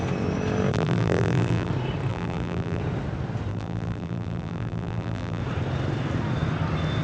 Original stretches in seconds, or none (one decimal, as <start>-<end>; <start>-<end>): 0.0-0.7; 1.7-2.1; 2.8-3.5; 5.4-7.0

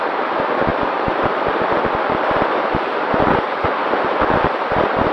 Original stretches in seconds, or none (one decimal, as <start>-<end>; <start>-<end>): 0.0-0.7; 3.8-5.1